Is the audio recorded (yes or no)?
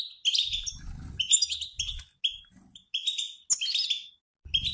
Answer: yes